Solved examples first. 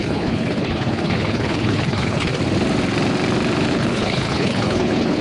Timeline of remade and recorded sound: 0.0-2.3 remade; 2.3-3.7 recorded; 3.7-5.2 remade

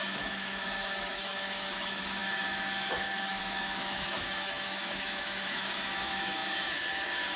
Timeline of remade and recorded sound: 0.0-7.4 remade